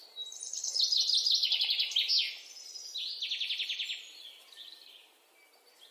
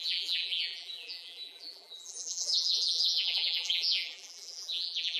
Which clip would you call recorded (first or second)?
first